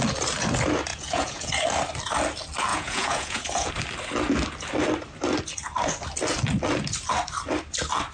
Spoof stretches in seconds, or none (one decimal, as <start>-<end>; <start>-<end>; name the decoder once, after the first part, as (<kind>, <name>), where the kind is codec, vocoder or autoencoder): 0.9-1.5 (vocoder, Vocos); 2.7-3.7